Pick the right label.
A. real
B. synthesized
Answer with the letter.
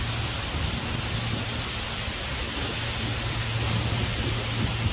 A